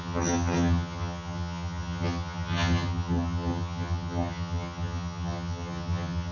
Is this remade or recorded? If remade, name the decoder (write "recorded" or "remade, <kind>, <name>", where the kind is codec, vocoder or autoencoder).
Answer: remade, vocoder, HiFi-GAN